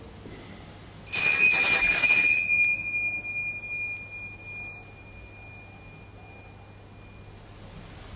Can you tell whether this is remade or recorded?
recorded